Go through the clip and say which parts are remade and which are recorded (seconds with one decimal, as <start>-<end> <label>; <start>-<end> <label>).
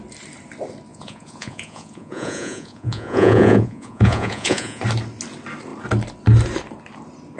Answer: 0.0-0.9 recorded; 0.9-4.8 remade; 4.8-7.4 recorded